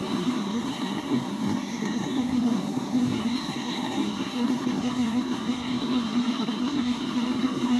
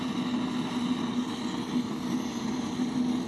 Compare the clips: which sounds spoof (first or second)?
first